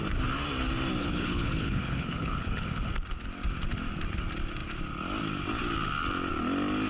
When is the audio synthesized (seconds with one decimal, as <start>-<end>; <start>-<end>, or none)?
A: 1.0-2.9